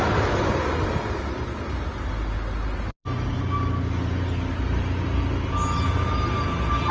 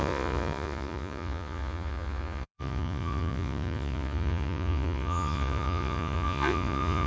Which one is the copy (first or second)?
second